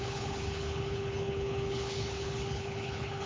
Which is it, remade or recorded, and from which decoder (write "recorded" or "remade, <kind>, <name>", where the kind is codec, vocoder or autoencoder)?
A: remade, codec, HILCodec